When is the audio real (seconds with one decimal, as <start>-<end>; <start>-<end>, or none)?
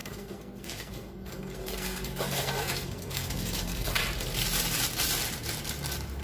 4.0-6.2